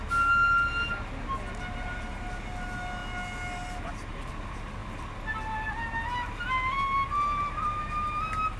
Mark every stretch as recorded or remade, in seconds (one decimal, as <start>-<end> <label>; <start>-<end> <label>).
0.0-8.6 recorded